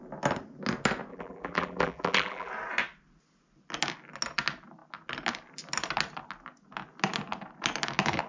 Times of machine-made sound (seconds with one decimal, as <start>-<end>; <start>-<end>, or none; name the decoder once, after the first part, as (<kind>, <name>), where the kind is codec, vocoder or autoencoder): 1.1-2.5 (vocoder, BigVGAN v2)